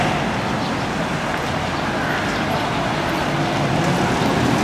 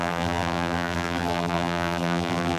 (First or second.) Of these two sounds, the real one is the first